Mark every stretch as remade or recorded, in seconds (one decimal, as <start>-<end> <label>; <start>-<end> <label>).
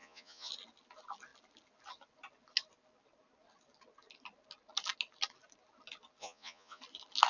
0.0-0.5 remade; 0.5-6.2 recorded; 6.2-6.8 remade; 6.8-7.3 recorded